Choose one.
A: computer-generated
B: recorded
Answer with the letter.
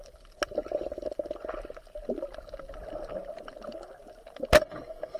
B